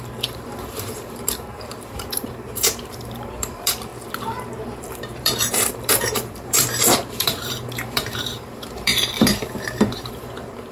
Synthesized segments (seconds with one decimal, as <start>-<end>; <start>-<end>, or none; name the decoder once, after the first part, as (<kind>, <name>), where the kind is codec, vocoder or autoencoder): 0.0-3.9 (vocoder, BigVGAN v2); 4.8-10.7